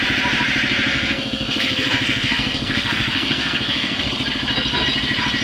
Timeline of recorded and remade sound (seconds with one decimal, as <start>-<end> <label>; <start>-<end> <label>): 0.0-0.9 recorded; 0.9-4.1 remade; 4.1-5.4 recorded